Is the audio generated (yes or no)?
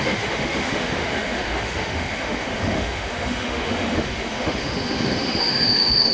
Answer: yes